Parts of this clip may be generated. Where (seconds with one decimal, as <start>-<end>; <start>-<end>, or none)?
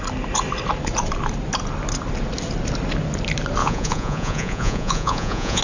3.6-5.6